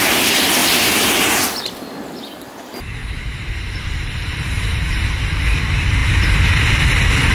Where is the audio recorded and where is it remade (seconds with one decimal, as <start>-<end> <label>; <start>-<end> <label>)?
0.0-3.0 recorded; 3.0-5.0 remade; 5.0-6.0 recorded; 6.0-6.5 remade; 6.5-7.3 recorded